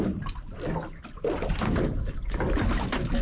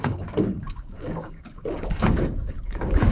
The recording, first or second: first